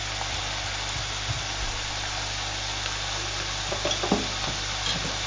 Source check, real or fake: real